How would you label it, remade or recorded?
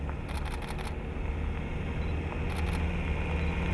recorded